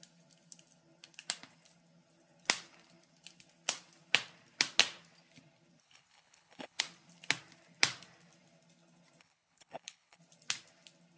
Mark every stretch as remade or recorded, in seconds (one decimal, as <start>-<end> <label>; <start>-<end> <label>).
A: 0.0-5.8 recorded; 5.8-6.8 remade; 6.8-9.2 recorded; 9.2-10.2 remade; 10.2-11.2 recorded